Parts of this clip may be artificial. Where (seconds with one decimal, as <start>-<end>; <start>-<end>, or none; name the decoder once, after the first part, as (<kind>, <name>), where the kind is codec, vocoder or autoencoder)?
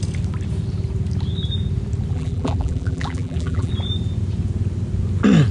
2.1-3.7 (vocoder, BigVGAN v2)